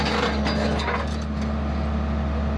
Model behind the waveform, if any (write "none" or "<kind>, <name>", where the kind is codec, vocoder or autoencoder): none